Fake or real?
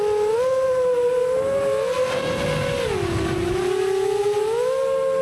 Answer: real